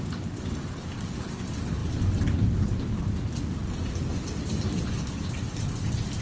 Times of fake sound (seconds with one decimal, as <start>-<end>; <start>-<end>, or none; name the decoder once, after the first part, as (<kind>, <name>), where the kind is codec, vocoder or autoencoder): none